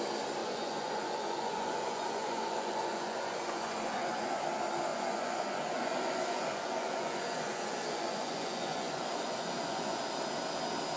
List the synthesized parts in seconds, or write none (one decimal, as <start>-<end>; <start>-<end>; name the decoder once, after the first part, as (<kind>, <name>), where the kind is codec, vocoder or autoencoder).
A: 0.4-4.4 (vocoder, Vocos); 4.9-10.0